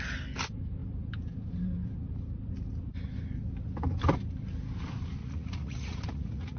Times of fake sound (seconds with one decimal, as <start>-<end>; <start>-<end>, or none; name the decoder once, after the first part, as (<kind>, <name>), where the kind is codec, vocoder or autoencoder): 5.2-6.6 (vocoder, Vocos)